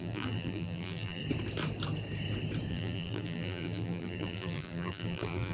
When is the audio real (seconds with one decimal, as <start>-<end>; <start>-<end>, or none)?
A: 1.2-2.7